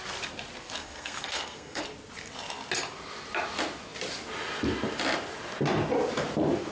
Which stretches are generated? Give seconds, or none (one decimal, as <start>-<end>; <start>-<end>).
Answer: 0.8-1.8